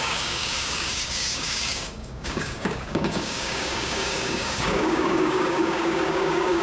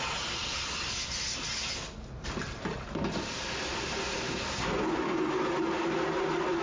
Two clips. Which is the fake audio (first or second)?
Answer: first